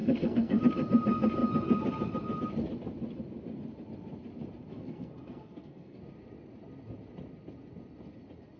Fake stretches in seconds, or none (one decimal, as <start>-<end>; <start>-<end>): 0.0-0.6; 4.7-6.0